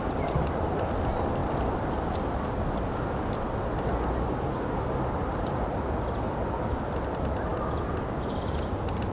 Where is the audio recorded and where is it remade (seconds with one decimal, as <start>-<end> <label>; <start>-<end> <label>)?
0.0-9.1 recorded